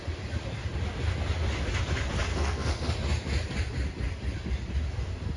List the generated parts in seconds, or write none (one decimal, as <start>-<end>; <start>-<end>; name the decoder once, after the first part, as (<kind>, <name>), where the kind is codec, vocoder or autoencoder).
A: 2.3-2.9 (codec, SNAC)